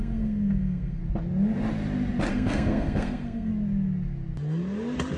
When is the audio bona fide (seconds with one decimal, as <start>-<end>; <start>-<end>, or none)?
1.0-2.3; 3.5-5.2